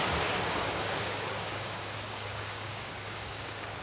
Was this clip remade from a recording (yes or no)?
yes